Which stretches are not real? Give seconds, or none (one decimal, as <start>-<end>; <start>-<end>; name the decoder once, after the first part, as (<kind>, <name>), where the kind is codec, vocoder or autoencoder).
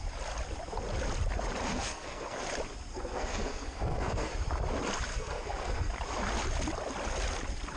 1.7-2.5 (codec, SNAC); 2.9-4.3; 5.1-5.9